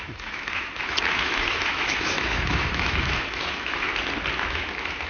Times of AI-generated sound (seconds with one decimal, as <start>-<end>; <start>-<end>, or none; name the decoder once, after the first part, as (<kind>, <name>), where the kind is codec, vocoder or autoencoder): 0.0-3.9 (autoencoder, DAC-VAE); 4.5-5.1